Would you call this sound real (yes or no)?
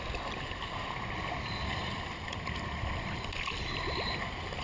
yes